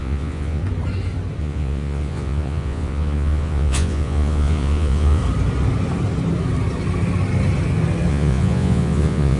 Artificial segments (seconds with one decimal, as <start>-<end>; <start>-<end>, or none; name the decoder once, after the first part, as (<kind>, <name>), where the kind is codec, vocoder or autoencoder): 0.0-0.6 (vocoder, Vocos); 1.4-5.2; 8.1-9.4